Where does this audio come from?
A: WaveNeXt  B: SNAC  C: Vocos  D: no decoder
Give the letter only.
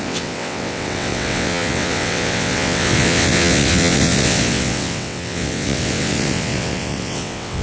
A